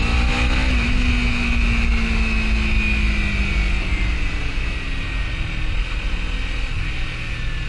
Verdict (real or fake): real